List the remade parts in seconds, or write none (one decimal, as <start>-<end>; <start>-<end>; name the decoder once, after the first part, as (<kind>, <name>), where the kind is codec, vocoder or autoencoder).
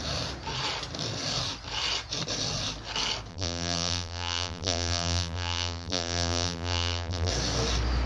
3.3-7.3 (vocoder, BigVGAN v2)